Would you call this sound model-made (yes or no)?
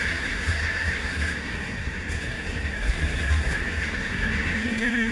yes